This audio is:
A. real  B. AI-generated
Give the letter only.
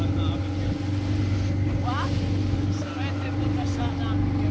A